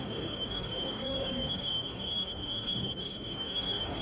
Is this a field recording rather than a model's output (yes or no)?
no